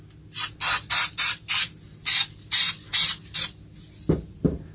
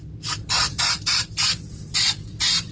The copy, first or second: second